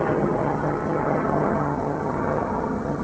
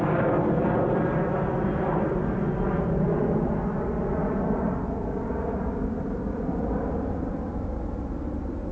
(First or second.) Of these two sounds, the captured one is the second